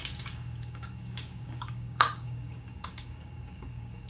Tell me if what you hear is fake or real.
fake